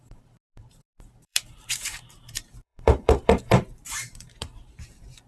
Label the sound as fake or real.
fake